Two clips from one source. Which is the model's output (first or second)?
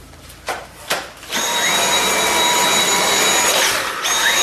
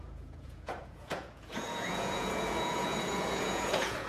second